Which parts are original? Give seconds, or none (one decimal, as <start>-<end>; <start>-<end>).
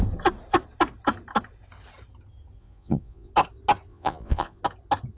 0.0-2.6; 3.3-3.9; 4.6-5.2